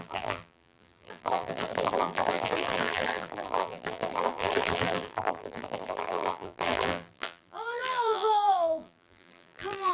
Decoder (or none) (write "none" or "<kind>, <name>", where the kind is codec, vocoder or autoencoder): vocoder, BigVGAN v2